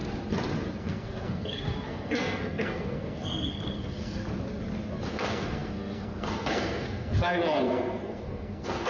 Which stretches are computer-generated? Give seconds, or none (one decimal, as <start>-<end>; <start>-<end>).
0.8-4.2; 5.1-8.9